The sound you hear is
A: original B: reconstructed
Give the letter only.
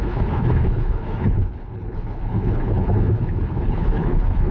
B